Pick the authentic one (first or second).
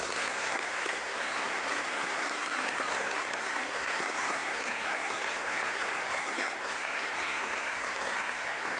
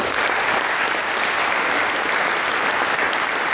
second